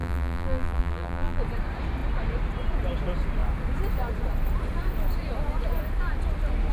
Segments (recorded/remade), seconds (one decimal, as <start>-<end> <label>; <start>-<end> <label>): 0.0-1.4 remade; 1.4-6.7 recorded